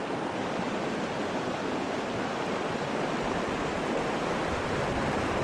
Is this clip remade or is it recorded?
recorded